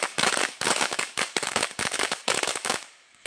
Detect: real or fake fake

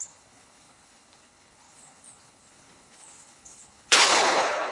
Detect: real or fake fake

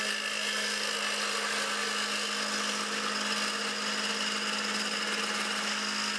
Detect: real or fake real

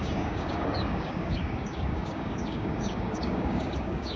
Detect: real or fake fake